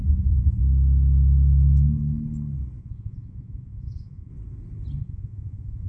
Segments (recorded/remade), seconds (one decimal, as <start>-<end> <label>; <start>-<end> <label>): 0.0-0.6 remade; 0.6-2.8 recorded; 2.8-4.3 remade; 4.3-5.0 recorded; 5.0-5.9 remade